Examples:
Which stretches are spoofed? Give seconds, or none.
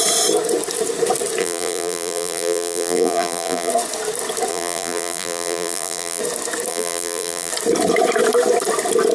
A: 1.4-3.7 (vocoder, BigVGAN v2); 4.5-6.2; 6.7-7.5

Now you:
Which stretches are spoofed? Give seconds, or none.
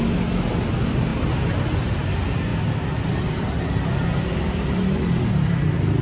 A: none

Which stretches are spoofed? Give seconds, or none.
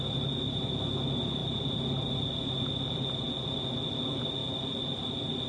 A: none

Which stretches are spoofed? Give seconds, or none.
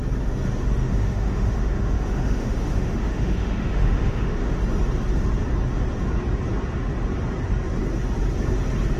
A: 0.8-4.6 (autoencoder, DAC-VAE)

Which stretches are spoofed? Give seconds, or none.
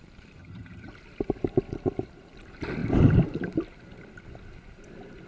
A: 0.4-0.9 (vocoder, HiFi-GAN)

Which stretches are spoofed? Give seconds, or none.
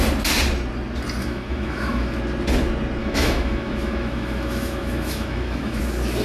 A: 1.2-2.2 (autoencoder, DAC-VAE); 3.0-5.8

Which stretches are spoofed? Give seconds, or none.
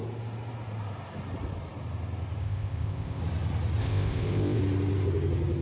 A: 2.4-3.2 (codec, ZipCodec); 3.8-4.6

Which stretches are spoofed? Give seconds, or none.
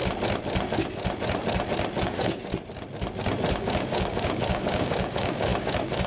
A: 2.0-2.4 (codec, DAC); 3.5-6.1